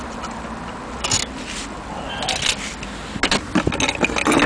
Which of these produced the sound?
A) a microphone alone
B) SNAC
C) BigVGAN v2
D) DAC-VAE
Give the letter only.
A